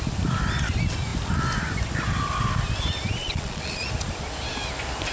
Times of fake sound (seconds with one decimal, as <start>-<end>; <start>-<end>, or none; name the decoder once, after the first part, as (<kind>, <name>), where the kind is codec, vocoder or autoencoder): 3.2-3.9 (vocoder, Vocos)